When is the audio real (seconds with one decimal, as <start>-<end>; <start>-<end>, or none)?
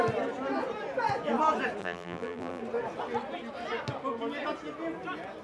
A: 0.0-1.8; 2.6-5.4